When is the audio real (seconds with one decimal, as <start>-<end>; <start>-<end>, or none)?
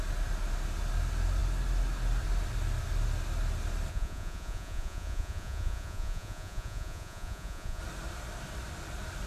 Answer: 0.0-3.9; 7.8-9.3